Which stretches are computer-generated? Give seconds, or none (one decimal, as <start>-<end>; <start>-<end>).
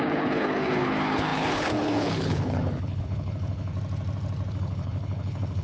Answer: 0.0-3.7; 4.5-5.6